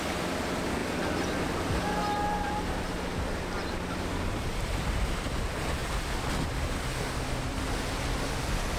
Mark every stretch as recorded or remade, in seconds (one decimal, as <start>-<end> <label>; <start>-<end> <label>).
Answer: 0.0-8.8 recorded